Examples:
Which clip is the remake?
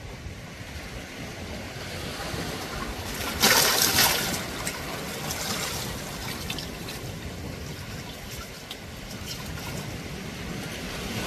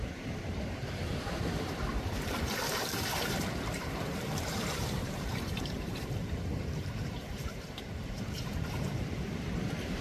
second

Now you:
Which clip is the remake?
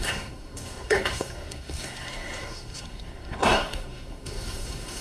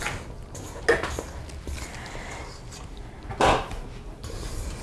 first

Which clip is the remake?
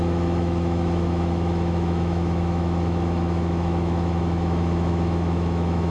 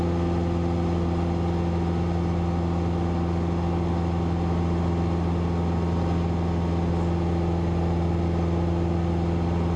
first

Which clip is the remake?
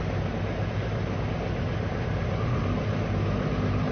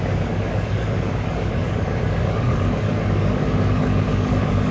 second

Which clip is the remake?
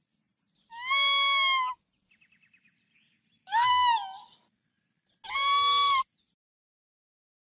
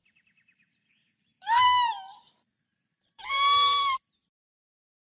second